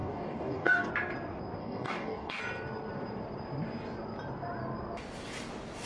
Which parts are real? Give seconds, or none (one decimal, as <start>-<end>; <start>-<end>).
0.9-1.6; 2.4-5.9